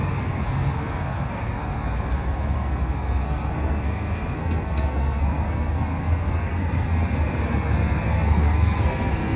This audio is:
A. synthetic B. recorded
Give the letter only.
A